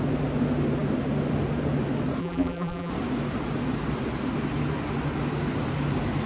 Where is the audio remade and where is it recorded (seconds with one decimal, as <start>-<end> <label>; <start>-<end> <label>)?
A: 0.0-2.2 recorded; 2.2-2.9 remade; 2.9-6.3 recorded